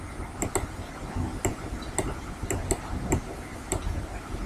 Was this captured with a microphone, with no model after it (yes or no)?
yes